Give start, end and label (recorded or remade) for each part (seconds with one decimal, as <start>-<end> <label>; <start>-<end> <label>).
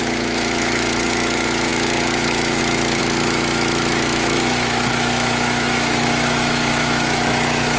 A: 0.0-7.8 remade